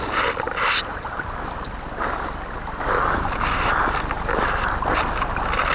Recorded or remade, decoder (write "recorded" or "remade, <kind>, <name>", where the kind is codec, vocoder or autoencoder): recorded